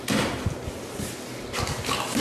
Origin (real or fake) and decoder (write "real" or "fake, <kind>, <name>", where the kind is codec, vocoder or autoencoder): real